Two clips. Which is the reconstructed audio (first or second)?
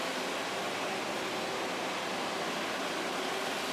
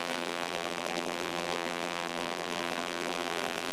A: second